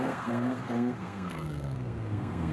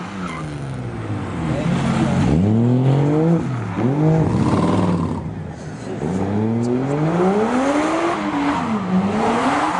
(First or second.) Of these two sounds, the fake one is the first